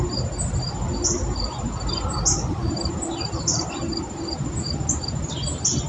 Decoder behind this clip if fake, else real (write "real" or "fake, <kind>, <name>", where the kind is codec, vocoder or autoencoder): real